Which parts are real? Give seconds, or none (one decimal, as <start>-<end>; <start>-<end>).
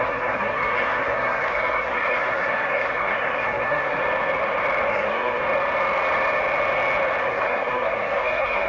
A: 4.0-4.9; 5.4-7.2